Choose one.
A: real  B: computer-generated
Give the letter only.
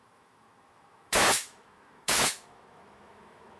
B